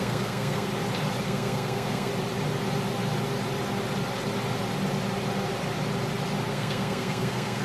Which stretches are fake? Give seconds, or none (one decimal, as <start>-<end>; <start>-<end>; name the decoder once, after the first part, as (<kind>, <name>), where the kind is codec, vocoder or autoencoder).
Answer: 0.0-0.7 (codec, SNAC); 1.2-2.1; 6.5-7.6